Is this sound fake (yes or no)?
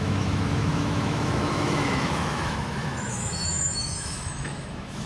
yes